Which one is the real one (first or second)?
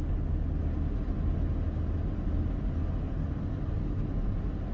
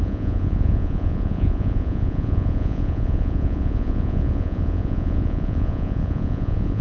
first